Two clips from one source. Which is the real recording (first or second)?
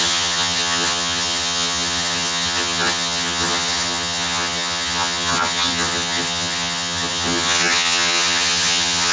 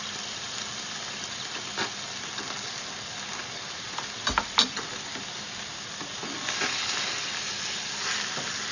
second